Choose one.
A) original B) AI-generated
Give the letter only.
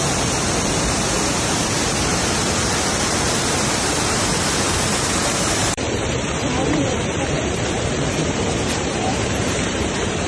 B